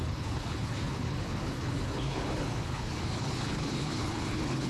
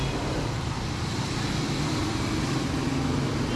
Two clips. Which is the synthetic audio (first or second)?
first